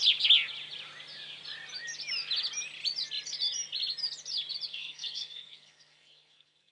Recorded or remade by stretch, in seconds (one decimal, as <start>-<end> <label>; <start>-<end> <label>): 0.0-4.7 recorded; 4.7-6.7 remade